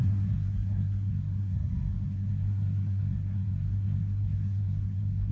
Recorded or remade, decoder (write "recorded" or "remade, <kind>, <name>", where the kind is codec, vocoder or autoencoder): remade, codec, SNAC